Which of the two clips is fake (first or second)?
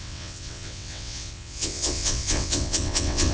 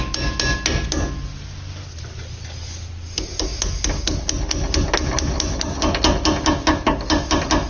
first